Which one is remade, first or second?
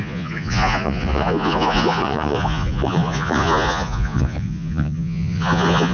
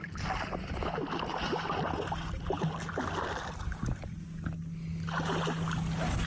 first